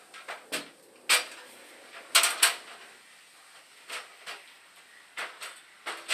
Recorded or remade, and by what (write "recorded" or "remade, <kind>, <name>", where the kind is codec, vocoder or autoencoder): recorded